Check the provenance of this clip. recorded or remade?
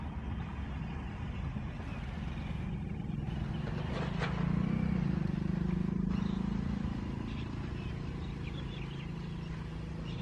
recorded